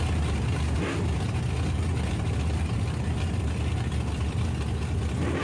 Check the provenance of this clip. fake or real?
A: real